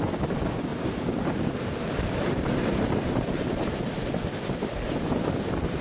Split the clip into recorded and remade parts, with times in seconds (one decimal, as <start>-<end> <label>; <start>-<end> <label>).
0.0-0.7 recorded; 0.7-3.9 remade; 3.9-5.8 recorded